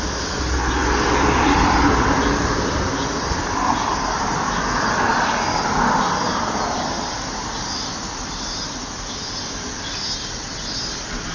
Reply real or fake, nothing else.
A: fake